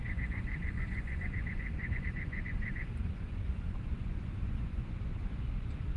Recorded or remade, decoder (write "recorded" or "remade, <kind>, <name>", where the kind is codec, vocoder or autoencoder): remade, vocoder, Vocos